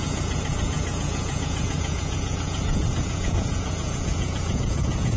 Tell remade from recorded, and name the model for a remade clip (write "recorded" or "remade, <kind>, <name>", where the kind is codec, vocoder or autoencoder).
remade, vocoder, Vocos